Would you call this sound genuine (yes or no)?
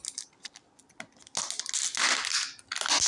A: yes